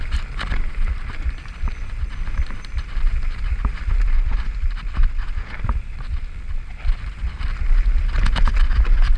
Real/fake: real